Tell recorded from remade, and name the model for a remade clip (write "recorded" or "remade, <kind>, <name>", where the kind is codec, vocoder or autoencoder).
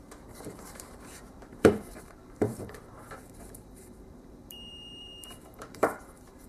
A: remade, vocoder, BigVGAN v2